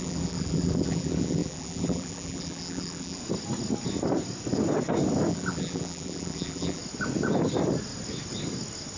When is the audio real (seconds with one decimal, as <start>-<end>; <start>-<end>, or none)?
3.2-5.3; 6.8-9.0